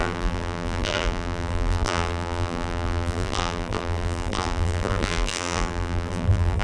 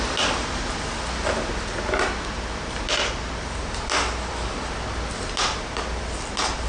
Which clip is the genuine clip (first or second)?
second